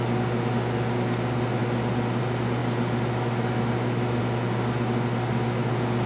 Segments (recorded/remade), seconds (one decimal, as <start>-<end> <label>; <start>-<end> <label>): 0.0-6.1 recorded